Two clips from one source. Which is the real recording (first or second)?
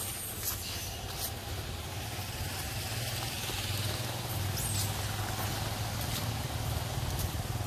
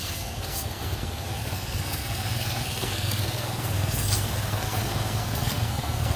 first